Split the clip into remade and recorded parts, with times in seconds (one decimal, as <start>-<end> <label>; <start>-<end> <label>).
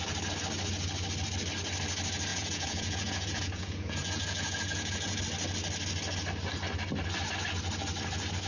0.0-2.3 recorded; 2.3-5.2 remade; 5.2-8.5 recorded